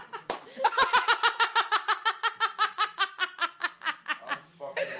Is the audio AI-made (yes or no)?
no